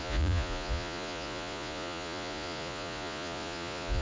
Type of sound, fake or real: fake